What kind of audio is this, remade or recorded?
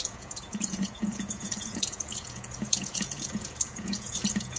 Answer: remade